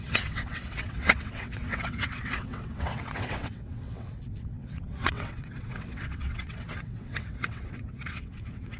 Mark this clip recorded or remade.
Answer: remade